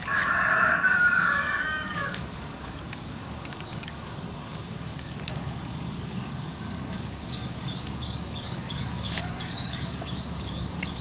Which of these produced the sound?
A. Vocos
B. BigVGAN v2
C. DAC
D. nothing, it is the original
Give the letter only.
C